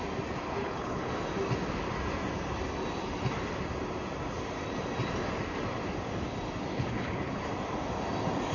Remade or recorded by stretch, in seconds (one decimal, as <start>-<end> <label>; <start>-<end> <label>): 0.0-0.6 recorded; 0.6-1.1 remade; 1.1-6.7 recorded; 6.7-7.4 remade; 7.4-8.5 recorded